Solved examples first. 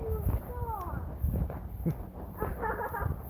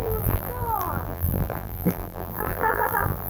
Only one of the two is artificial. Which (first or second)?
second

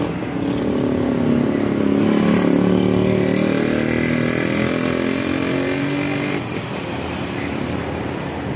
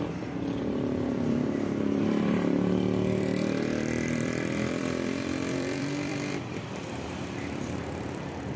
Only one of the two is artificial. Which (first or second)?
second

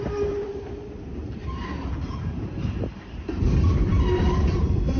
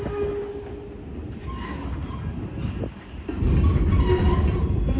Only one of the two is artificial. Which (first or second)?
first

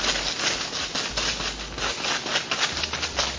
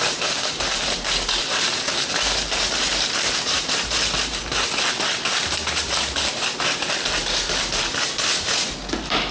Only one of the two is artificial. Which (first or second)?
second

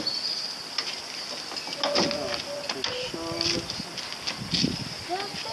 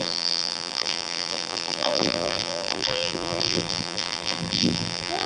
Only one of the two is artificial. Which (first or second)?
second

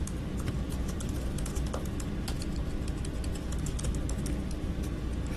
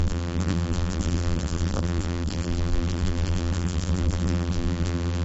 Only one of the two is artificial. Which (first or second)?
second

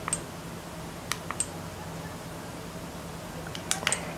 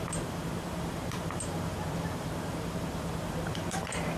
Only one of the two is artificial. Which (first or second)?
second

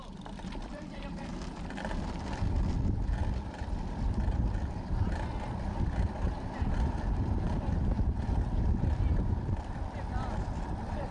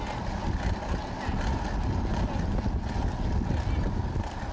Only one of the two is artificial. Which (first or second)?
first